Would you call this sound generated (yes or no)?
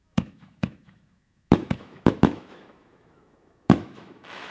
yes